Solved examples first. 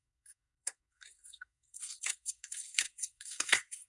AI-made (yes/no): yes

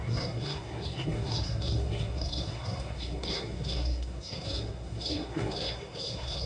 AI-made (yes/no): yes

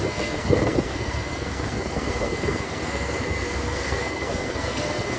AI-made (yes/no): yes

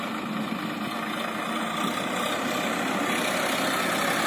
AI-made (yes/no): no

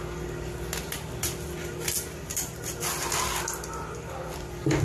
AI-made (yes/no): no